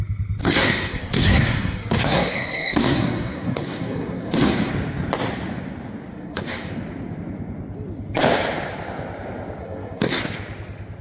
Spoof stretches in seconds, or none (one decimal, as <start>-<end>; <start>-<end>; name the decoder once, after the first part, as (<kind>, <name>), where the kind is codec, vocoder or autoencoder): 0.4-4.7 (codec, SNAC); 6.1-6.7; 9.6-10.2